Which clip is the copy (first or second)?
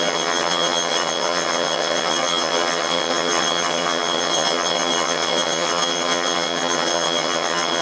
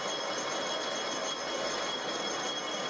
first